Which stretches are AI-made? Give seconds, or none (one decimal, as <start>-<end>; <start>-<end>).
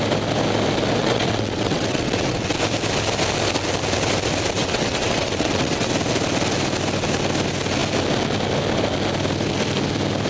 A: 1.0-2.5; 4.6-5.9